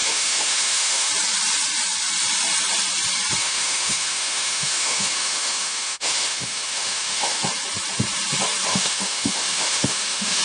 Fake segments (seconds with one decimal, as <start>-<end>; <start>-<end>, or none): 0.0-1.1; 3.4-7.4; 8.7-10.4